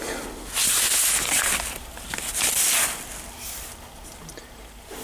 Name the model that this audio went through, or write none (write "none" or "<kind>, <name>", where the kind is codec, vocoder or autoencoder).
none